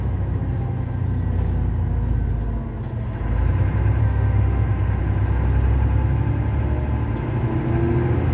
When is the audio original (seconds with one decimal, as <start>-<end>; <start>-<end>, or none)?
0.0-4.0; 5.0-8.3